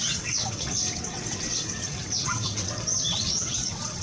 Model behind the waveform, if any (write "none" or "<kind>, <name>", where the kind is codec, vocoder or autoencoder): vocoder, WaveNeXt